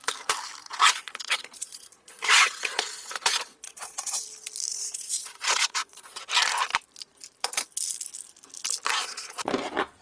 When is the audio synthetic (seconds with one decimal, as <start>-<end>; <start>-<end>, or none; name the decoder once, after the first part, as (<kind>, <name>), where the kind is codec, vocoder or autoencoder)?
0.6-4.2 (vocoder, Vocos); 4.7-6.2; 9.0-9.5